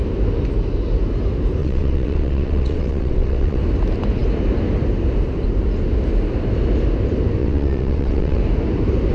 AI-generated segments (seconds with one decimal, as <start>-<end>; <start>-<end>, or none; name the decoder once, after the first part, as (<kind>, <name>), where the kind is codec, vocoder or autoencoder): 1.6-3.6 (vocoder, WaveNeXt); 7.4-8.4